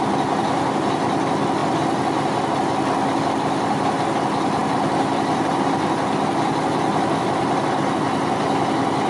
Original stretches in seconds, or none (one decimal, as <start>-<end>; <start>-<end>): 0.0-9.1